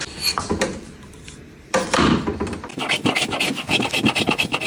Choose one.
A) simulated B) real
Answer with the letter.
A